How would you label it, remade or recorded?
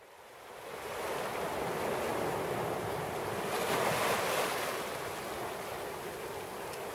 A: recorded